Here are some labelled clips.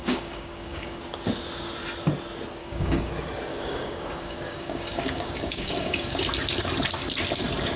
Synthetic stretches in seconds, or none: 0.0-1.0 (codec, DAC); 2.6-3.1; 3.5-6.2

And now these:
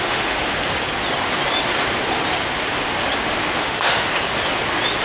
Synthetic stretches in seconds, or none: 0.0-0.6 (autoencoder, DAC-VAE); 3.6-4.1

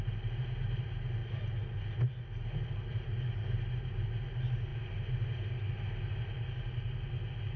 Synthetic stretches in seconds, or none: none

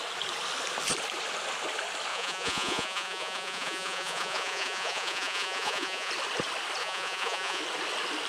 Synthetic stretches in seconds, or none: 2.1-6.1 (vocoder, Vocos); 6.8-7.6

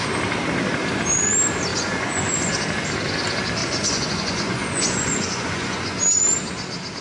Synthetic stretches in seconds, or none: 1.7-2.5 (vocoder, Vocos); 3.6-6.0

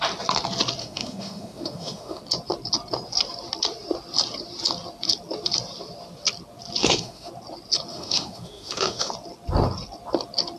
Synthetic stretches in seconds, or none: 0.8-2.2 (autoencoder, DAC-VAE); 6.8-7.3; 7.9-9.1

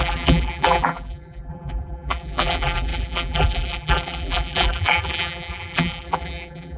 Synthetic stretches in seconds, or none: 0.0-6.8 (vocoder, BigVGAN v2)

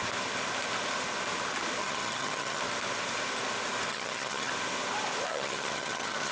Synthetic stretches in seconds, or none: 1.8-2.6 (vocoder, HiFi-GAN); 3.9-4.5; 5.3-6.3